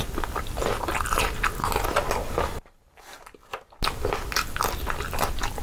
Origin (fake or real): real